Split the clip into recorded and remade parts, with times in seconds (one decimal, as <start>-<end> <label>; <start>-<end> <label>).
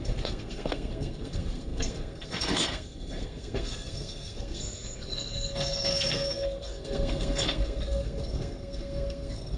0.0-9.6 remade